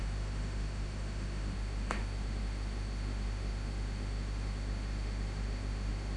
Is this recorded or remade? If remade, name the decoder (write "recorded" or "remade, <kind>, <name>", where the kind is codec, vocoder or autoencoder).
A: remade, autoencoder, DAC-VAE